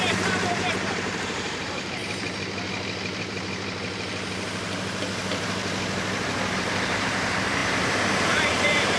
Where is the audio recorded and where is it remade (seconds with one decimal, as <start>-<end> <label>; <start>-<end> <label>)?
0.0-2.0 remade; 2.0-6.6 recorded; 6.6-9.0 remade